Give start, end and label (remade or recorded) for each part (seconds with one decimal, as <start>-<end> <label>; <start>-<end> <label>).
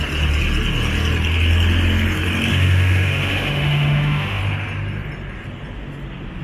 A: 0.0-2.5 recorded; 2.5-4.4 remade; 4.4-6.4 recorded